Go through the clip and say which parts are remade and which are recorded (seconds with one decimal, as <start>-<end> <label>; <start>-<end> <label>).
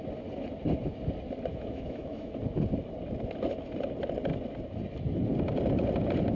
0.0-1.5 recorded; 1.5-2.3 remade; 2.3-6.3 recorded